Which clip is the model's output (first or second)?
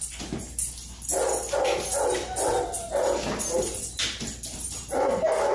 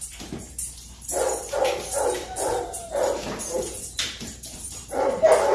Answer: second